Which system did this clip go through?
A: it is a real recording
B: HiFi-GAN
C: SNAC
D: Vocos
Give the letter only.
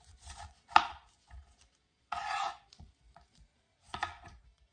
D